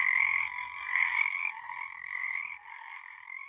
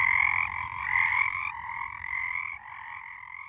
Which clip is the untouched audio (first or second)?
second